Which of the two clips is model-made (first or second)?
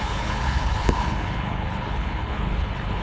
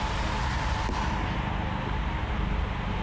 first